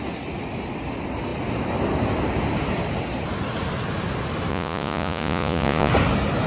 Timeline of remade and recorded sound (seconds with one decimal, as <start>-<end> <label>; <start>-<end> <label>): 0.0-4.5 recorded; 4.5-5.9 remade; 5.9-6.5 recorded